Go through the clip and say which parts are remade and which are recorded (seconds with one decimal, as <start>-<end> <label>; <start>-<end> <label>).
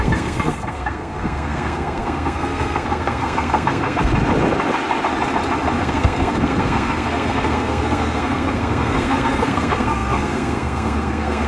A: 0.0-4.1 remade; 4.1-5.8 recorded; 5.8-11.5 remade